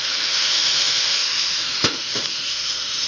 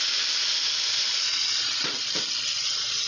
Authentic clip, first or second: second